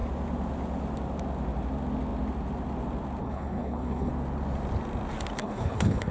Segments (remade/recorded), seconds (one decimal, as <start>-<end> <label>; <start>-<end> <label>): 0.0-3.2 recorded; 3.2-4.1 remade; 4.1-5.4 recorded; 5.4-6.1 remade